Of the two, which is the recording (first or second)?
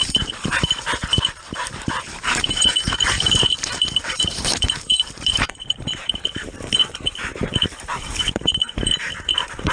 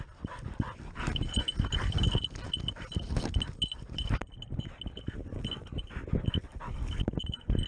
second